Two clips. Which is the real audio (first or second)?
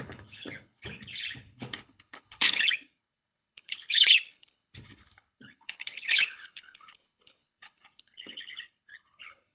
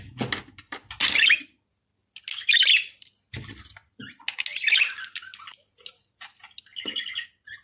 second